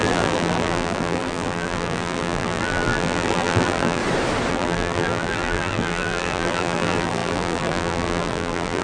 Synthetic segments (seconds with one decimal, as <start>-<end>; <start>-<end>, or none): 0.0-4.0; 4.5-8.8

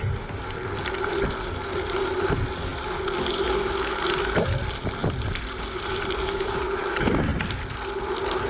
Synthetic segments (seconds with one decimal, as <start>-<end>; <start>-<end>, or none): 5.0-6.8; 7.3-8.5

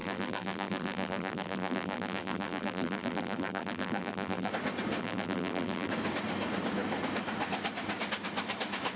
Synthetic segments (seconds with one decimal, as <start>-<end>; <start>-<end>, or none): 0.0-4.5; 5.0-5.9

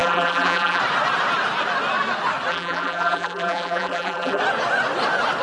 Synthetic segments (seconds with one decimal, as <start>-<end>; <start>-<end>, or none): 0.0-0.8; 2.5-4.4

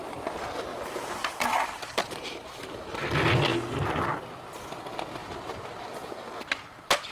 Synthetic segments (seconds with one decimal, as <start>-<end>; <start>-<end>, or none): 0.7-3.1; 5.2-5.8

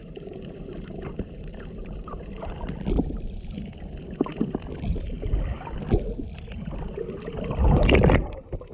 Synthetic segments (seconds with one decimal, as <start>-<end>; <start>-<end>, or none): 0.0-2.7